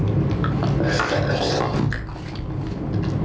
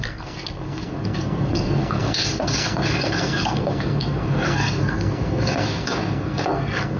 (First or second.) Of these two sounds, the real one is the first